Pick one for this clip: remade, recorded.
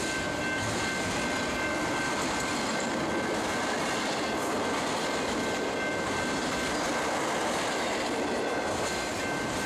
recorded